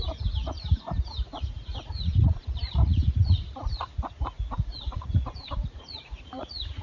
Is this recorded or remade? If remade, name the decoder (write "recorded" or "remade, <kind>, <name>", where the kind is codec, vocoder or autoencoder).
remade, vocoder, Vocos